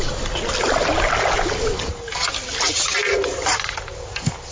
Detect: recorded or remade recorded